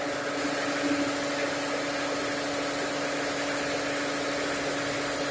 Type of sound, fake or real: real